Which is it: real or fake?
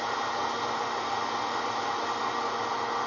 real